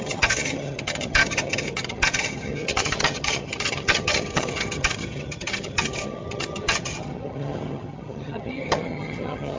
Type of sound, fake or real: fake